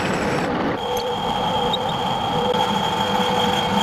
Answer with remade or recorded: recorded